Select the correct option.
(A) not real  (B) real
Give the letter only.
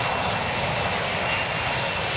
B